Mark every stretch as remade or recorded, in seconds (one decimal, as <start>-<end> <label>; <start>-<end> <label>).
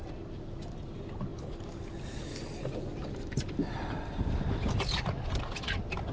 0.0-6.1 recorded